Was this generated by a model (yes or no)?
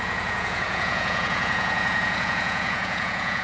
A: yes